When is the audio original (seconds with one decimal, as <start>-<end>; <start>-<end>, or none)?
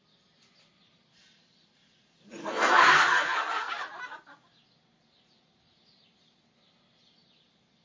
0.0-2.4; 3.7-7.8